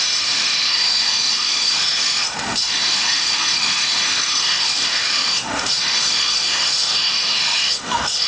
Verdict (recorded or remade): remade